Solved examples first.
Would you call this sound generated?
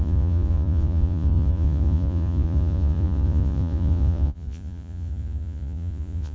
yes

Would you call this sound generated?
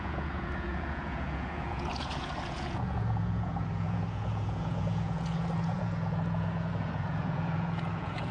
yes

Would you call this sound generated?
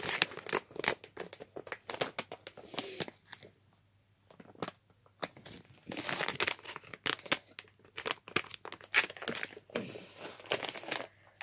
no